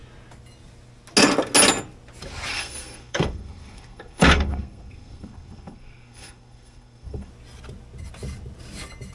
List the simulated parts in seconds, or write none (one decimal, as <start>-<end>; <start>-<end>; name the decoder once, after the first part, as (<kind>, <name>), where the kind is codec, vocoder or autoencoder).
2.5-7.3 (codec, SNAC)